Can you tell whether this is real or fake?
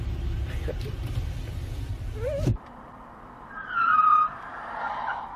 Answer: fake